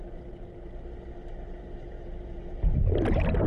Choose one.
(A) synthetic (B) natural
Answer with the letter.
B